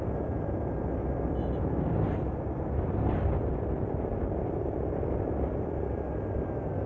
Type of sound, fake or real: real